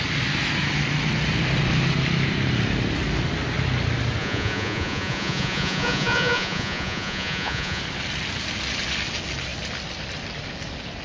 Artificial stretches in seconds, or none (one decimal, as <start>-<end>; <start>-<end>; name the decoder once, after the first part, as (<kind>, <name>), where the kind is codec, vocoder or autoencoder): 4.2-7.8 (vocoder, Vocos)